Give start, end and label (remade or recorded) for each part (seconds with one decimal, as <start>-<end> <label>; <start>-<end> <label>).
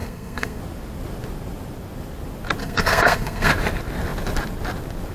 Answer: 0.0-0.6 remade; 0.6-2.6 recorded; 2.6-3.5 remade; 3.5-5.1 recorded